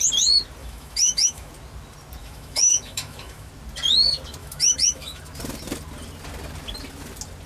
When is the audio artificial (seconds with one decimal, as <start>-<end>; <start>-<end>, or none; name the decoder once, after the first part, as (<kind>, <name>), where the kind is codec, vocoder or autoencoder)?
0.6-1.5 (autoencoder, DAC-VAE); 2.2-3.5; 4.4-5.2